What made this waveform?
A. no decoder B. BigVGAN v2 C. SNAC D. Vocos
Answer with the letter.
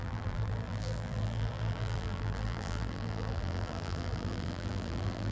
B